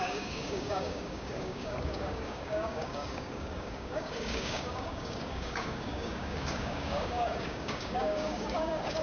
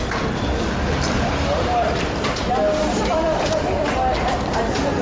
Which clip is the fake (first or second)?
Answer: first